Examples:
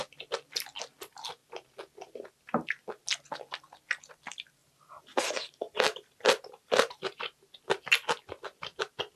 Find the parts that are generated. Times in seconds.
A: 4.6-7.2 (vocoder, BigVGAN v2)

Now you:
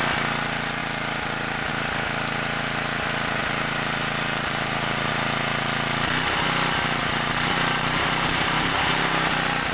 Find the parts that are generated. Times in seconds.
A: 3.4-5.1 (vocoder, BigVGAN v2); 7.0-9.0